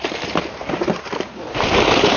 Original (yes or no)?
no